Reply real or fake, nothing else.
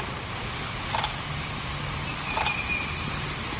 real